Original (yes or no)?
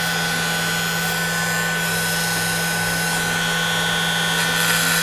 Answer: yes